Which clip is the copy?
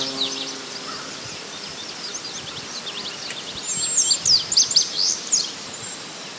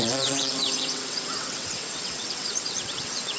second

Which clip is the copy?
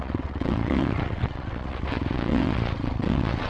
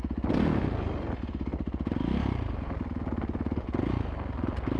first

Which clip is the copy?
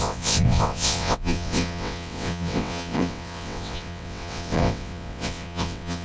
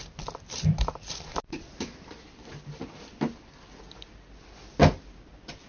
first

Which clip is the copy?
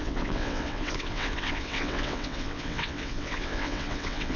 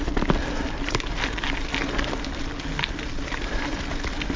first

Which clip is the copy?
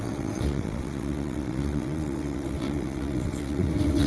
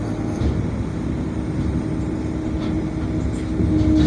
first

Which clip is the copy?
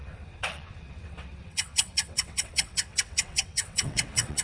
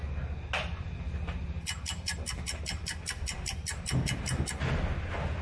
first